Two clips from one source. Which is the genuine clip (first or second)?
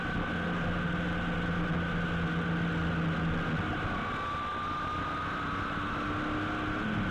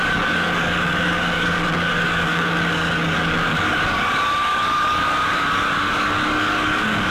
first